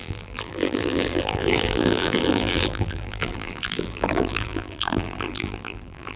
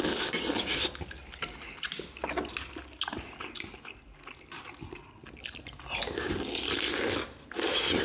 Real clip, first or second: second